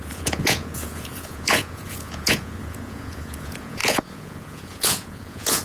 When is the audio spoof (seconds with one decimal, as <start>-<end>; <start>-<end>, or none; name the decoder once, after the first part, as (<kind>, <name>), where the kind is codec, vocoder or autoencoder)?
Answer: 0.0-5.6 (vocoder, Vocos)